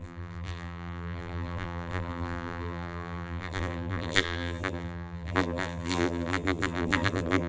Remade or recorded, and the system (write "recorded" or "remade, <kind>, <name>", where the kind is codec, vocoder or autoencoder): remade, vocoder, BigVGAN v2